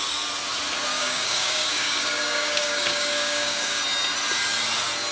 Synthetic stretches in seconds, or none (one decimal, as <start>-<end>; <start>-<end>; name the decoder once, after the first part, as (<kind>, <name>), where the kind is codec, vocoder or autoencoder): 0.9-3.8 (codec, DAC)